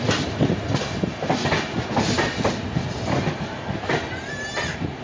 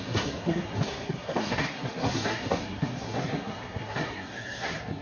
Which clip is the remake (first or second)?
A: second